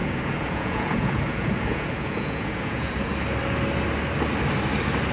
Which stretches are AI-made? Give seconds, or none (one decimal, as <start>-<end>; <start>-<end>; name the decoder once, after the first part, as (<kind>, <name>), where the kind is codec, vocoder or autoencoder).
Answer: 0.0-3.1 (vocoder, Vocos)